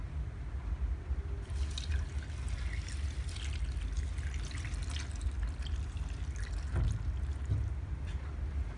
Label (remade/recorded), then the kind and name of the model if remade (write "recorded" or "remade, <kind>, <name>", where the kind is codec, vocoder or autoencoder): recorded